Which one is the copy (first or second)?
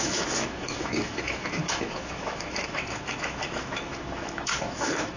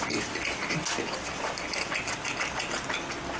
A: first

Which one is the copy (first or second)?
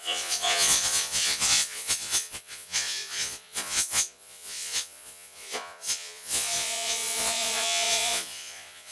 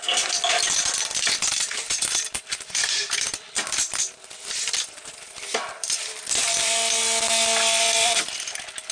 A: first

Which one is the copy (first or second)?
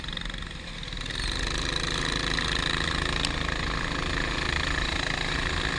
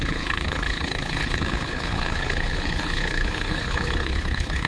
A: second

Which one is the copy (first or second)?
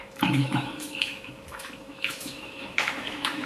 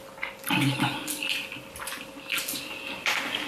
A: first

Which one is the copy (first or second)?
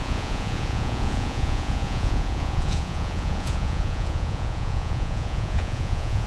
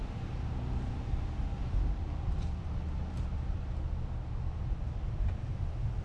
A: first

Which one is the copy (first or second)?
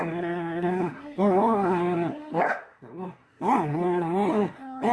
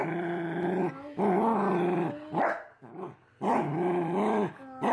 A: first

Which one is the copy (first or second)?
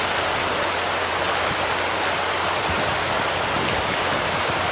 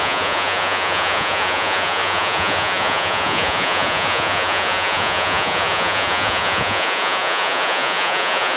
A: second